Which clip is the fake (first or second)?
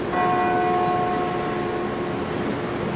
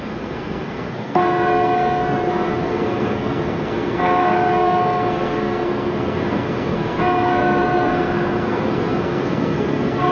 second